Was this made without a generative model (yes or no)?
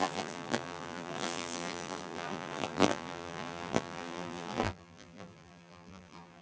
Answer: no